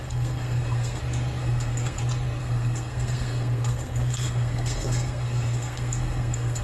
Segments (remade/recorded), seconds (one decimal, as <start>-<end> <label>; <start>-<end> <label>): 0.0-1.0 remade; 1.0-1.4 recorded; 1.4-2.0 remade; 2.0-2.4 recorded; 2.4-6.6 remade